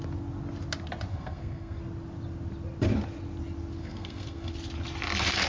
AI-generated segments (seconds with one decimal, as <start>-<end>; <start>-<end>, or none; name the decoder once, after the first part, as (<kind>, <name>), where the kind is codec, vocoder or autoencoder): 1.1-1.8 (codec, SNAC); 3.8-4.5